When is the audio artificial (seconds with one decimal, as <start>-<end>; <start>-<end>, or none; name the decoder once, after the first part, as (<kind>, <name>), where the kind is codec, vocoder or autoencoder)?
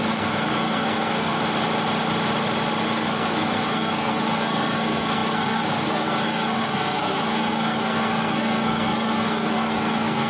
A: 0.0-1.4 (codec, SNAC); 2.8-10.3